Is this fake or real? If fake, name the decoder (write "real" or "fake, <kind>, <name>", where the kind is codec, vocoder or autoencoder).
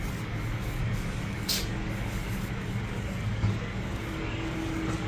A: fake, codec, DAC